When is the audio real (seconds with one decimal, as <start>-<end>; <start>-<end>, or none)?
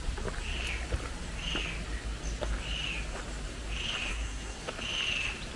0.0-4.1; 4.7-5.6